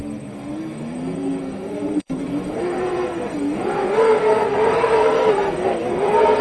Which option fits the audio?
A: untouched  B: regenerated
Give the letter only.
B